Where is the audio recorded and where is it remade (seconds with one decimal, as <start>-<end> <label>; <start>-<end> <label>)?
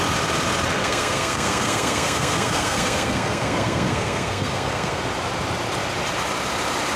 0.0-0.8 recorded; 0.8-5.0 remade; 5.0-7.0 recorded